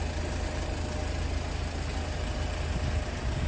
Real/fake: real